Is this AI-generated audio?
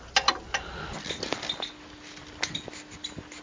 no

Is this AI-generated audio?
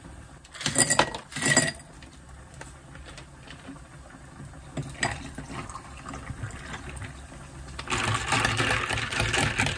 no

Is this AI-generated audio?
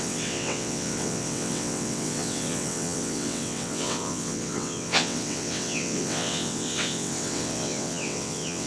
yes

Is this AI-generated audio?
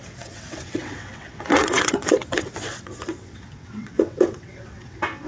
yes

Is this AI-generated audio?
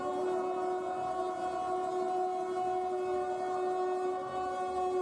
no